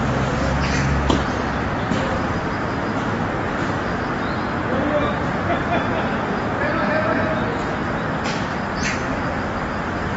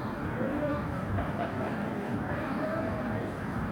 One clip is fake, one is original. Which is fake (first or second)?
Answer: second